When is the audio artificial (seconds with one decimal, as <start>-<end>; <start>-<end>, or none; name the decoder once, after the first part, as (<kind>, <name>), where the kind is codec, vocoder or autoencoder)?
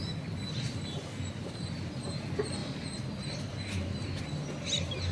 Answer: none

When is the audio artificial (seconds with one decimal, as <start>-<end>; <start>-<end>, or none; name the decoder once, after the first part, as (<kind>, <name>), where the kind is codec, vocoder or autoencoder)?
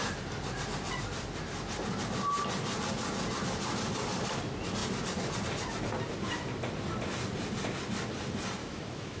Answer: 8.6-9.2 (autoencoder, DAC-VAE)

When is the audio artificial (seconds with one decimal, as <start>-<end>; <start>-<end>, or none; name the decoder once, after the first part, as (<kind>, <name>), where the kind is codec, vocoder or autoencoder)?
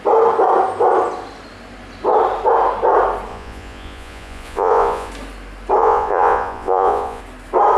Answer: 3.3-5.1 (vocoder, Vocos); 5.8-7.2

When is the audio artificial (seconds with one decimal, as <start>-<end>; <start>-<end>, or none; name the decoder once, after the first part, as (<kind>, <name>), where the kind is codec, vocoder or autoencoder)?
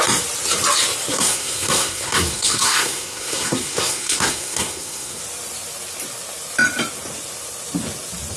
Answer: 1.1-5.2 (codec, SNAC)